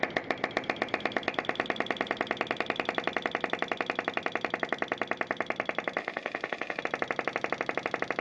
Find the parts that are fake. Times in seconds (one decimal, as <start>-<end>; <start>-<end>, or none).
6.0-6.8

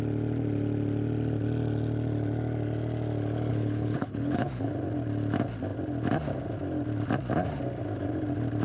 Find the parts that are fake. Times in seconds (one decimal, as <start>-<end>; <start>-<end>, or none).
3.5-4.7

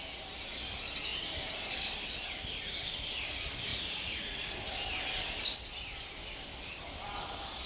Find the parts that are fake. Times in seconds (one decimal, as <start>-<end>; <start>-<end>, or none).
3.7-4.5

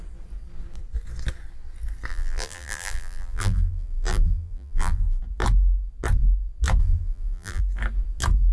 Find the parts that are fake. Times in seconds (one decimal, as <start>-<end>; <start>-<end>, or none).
2.1-5.2; 6.8-7.6

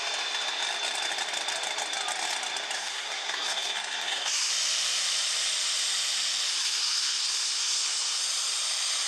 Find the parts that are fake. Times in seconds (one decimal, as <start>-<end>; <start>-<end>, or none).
2.8-4.5; 6.5-8.2